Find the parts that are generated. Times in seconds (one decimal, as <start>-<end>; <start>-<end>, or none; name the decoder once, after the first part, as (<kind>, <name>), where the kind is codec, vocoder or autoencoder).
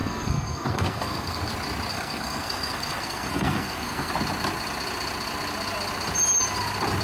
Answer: 0.0-1.5 (codec, SNAC); 1.9-4.1